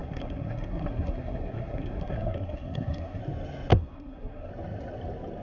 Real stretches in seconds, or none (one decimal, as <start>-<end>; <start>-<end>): 3.2-3.7; 4.5-5.4